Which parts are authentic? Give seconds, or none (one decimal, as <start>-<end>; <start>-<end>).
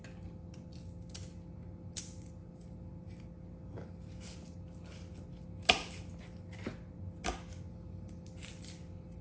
0.0-9.2